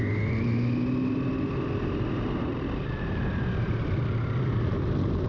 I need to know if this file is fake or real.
real